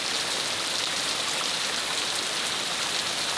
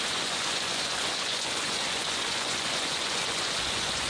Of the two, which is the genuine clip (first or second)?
first